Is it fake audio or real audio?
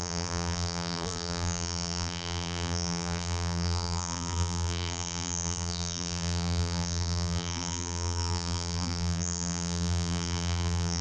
fake